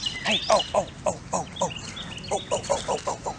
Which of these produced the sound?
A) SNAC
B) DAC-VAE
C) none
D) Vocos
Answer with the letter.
C